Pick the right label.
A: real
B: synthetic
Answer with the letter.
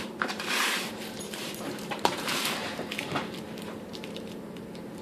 B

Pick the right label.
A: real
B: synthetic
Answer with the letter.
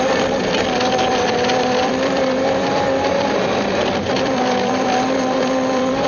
B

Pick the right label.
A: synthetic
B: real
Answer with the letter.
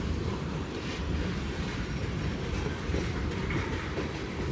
B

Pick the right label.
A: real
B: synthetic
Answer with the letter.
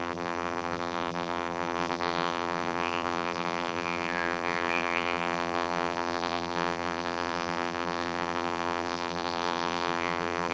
B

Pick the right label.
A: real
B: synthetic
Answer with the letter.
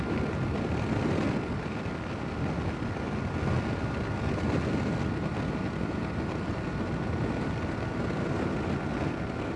A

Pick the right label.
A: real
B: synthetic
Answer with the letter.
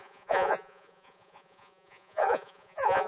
B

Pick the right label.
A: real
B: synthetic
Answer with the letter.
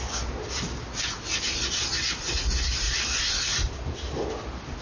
A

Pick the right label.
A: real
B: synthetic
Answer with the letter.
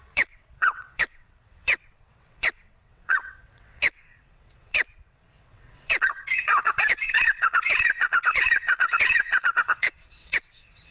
B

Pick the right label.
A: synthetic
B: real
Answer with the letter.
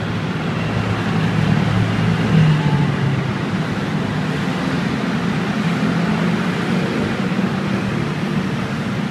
B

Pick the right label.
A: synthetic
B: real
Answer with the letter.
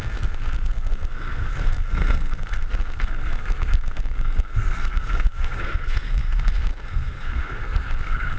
A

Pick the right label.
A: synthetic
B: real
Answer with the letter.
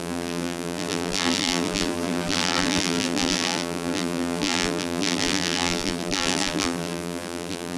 A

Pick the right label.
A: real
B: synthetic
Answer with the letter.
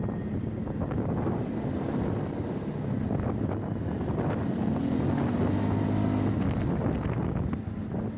A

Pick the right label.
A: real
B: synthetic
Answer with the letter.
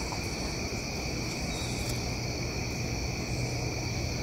A